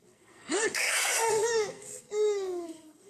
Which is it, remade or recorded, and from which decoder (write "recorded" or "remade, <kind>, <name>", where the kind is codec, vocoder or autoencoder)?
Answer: remade, codec, SNAC